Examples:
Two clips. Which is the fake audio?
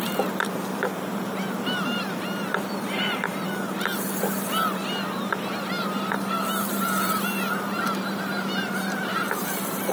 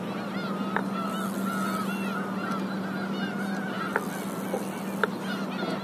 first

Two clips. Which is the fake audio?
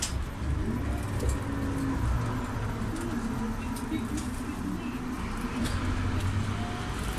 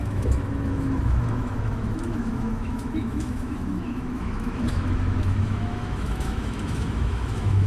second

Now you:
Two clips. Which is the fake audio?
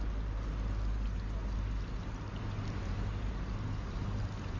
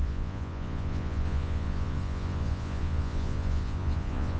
second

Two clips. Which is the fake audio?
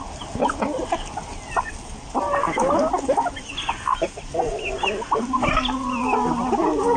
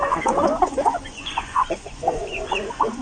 second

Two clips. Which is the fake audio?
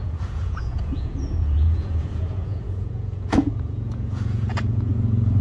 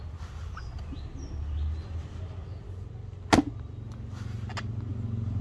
first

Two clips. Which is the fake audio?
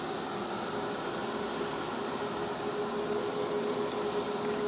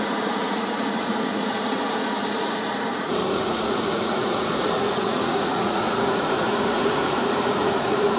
second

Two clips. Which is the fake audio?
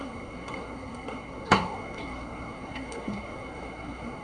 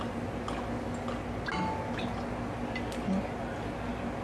first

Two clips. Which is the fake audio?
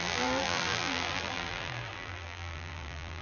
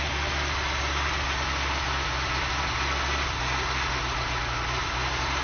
first